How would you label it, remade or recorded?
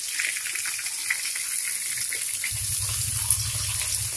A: recorded